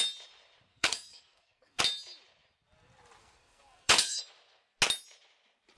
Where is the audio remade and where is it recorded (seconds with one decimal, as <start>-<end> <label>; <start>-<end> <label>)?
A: 0.0-0.7 recorded; 0.7-1.8 remade; 1.8-3.2 recorded; 3.2-4.2 remade; 4.2-5.8 recorded